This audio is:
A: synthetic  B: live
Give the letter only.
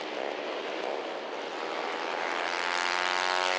B